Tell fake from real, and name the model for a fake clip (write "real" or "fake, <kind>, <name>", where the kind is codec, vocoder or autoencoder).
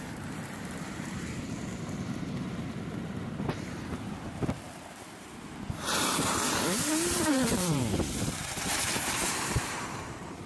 fake, vocoder, BigVGAN v2